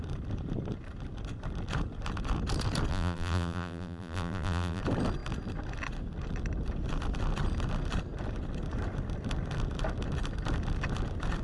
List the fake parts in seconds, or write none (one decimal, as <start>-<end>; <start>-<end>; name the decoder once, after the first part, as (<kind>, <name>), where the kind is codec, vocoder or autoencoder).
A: 2.9-4.8 (vocoder, BigVGAN v2)